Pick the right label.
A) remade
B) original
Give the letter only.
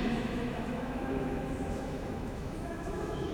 A